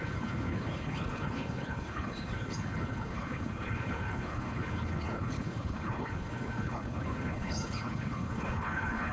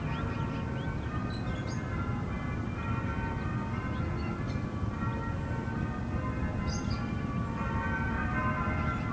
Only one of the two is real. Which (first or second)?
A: second